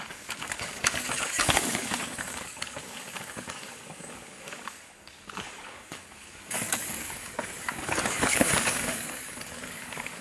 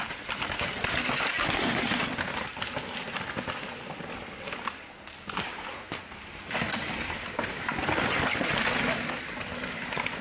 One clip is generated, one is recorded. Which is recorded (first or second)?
second